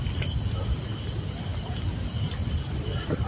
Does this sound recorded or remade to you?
recorded